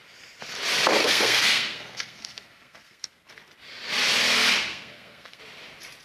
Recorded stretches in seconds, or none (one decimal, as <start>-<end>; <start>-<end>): 0.0-1.0; 3.3-4.7; 5.4-6.0